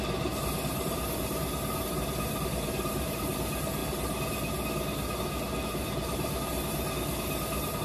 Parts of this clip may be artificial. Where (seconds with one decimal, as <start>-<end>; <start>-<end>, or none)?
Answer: 0.0-3.8